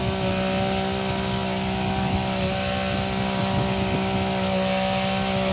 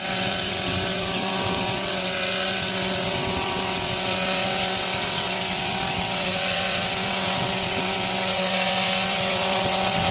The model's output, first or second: second